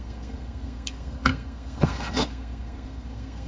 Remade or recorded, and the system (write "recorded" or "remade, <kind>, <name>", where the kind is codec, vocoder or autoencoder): remade, codec, SNAC